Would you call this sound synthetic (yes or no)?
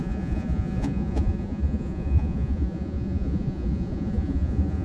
yes